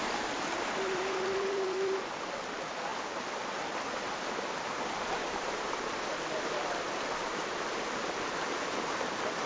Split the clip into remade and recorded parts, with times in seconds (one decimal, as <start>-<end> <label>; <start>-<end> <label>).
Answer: 0.0-2.9 remade; 2.9-4.6 recorded; 4.6-9.5 remade